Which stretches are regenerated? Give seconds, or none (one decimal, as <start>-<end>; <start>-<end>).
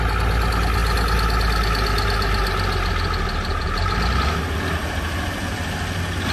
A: none